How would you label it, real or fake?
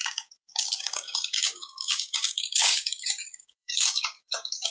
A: fake